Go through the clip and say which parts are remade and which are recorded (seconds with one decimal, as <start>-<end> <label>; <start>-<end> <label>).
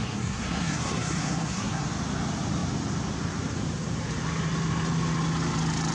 0.0-1.9 remade; 1.9-5.9 recorded